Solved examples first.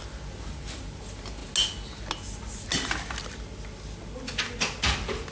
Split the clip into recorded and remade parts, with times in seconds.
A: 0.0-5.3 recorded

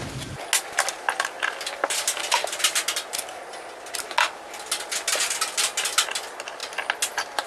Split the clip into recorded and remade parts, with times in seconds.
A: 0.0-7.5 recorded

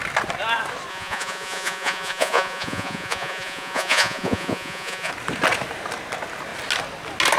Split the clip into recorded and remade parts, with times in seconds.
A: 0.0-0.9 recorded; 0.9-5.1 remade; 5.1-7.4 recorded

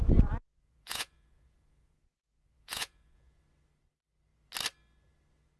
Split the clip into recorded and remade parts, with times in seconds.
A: 0.0-0.4 recorded; 0.4-3.4 remade; 3.4-5.6 recorded